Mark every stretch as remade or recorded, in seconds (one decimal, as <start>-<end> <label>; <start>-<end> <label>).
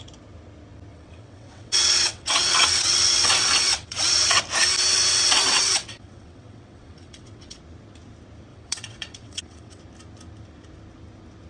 0.0-0.9 recorded; 0.9-4.4 remade; 4.4-4.9 recorded; 4.9-7.6 remade; 7.6-8.5 recorded; 8.5-9.8 remade; 9.8-11.5 recorded